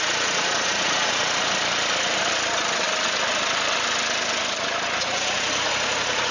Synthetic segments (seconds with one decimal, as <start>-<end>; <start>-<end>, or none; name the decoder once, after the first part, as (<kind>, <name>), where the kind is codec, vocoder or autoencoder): 0.0-1.2 (vocoder, Vocos); 5.0-6.3